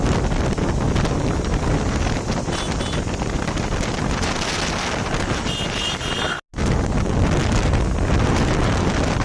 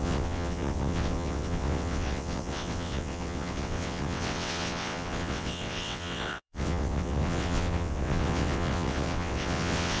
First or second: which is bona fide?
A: first